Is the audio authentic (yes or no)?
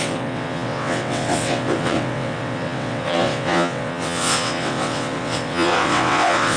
no